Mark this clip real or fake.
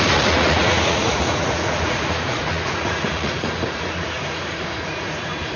fake